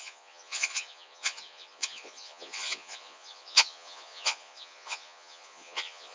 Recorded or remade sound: remade